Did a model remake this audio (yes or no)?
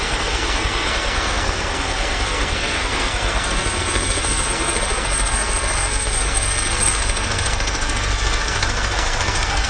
yes